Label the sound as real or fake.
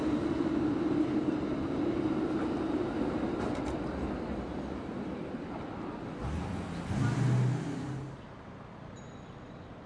real